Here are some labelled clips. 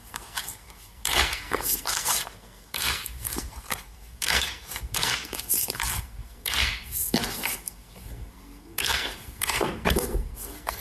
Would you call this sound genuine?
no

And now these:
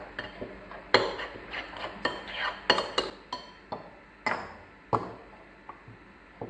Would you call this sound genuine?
yes